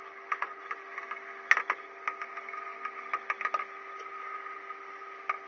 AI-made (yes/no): no